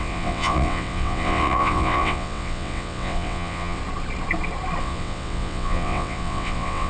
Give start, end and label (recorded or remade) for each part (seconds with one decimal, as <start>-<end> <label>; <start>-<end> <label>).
0.0-3.8 remade; 3.8-4.8 recorded; 4.8-6.9 remade